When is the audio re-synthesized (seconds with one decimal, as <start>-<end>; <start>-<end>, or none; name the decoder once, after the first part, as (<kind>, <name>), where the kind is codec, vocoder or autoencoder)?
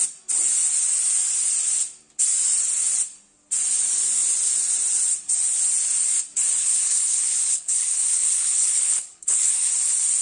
6.6-9.7 (codec, HILCodec)